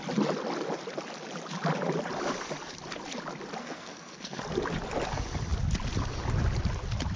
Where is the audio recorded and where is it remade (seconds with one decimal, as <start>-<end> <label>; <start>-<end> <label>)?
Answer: 0.0-3.6 recorded; 3.6-4.4 remade; 4.4-7.2 recorded